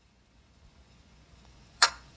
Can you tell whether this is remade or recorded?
remade